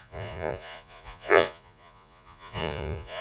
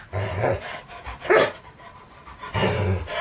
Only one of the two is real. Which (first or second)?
second